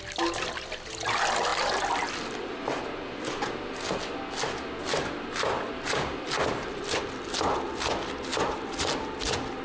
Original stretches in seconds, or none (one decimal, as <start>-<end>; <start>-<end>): 0.0-9.6